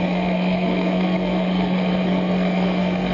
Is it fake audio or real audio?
fake